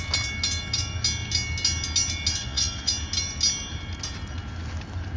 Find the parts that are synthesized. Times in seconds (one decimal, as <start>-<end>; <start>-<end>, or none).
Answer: 2.4-2.9